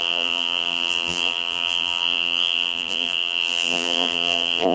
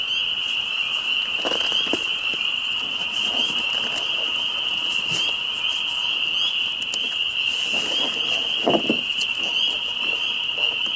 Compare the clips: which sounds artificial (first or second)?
first